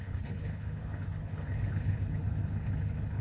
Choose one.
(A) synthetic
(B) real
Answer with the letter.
A